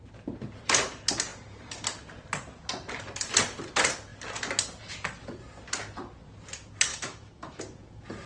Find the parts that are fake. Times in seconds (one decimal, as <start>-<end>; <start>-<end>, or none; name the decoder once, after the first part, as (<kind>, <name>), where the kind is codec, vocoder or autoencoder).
6.9-7.6 (autoencoder, DAC-VAE)